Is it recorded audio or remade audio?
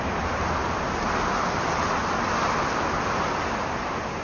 recorded